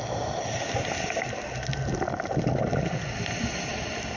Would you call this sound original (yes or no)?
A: yes